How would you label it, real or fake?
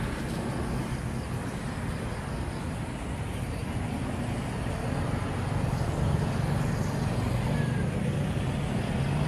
real